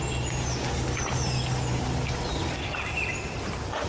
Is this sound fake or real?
real